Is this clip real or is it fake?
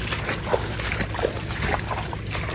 real